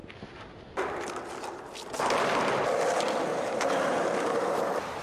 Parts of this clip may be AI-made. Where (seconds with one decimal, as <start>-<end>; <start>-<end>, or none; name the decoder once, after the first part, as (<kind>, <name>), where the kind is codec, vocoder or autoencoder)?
3.3-5.0 (vocoder, BigVGAN v2)